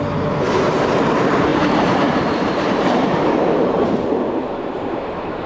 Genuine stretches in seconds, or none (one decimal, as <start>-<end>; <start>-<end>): none